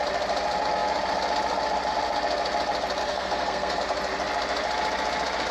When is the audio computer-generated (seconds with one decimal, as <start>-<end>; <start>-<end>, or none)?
3.0-3.8